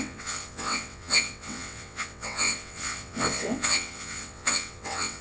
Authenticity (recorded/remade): remade